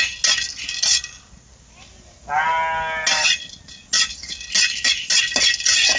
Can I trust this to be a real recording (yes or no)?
yes